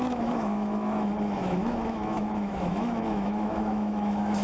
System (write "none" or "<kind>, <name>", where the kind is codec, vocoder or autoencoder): autoencoder, DAC-VAE